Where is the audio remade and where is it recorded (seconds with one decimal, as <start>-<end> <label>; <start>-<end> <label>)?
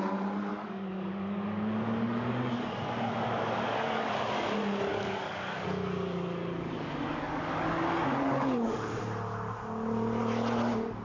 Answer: 0.0-0.5 recorded; 0.5-4.1 remade; 4.1-4.9 recorded; 4.9-9.0 remade; 9.0-11.0 recorded